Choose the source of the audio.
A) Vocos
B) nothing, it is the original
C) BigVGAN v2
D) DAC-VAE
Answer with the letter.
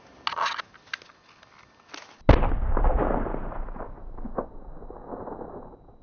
B